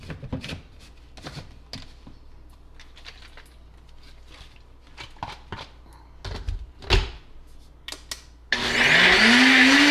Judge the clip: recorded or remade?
recorded